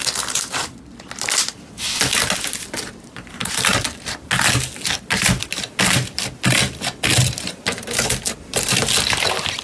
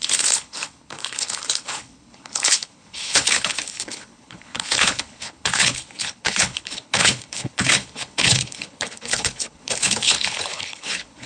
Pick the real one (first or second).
first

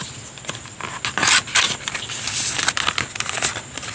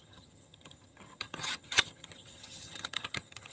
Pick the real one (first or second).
first